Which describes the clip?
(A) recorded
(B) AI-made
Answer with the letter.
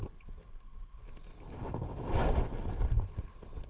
A